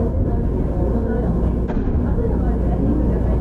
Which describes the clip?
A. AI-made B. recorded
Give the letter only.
B